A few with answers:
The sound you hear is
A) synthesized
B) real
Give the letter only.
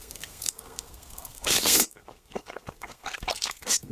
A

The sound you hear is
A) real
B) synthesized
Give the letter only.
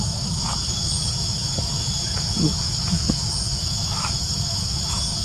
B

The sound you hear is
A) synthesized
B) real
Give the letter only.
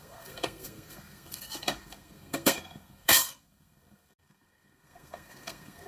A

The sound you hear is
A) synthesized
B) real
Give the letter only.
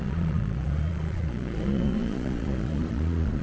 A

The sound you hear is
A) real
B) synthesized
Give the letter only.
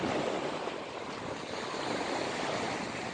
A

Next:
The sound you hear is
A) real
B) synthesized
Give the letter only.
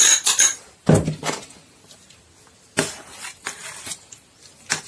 A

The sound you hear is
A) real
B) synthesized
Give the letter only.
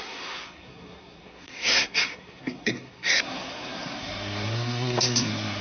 B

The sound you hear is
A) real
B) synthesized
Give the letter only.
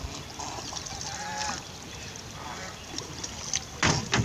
A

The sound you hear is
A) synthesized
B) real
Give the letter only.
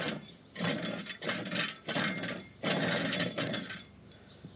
B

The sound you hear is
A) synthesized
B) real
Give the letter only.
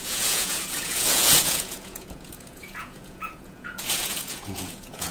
A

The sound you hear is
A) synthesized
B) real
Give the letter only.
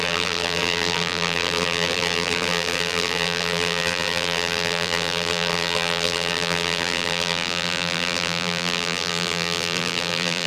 A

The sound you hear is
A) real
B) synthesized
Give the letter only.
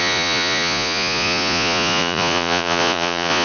B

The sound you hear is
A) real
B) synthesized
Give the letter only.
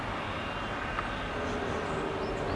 A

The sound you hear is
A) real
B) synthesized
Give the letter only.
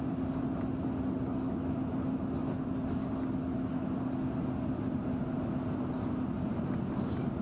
A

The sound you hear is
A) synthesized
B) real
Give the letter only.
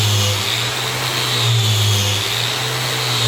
B